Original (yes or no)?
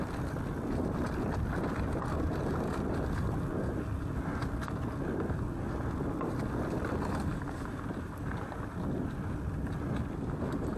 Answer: yes